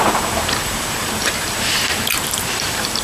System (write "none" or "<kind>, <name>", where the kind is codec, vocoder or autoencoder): vocoder, BigVGAN v2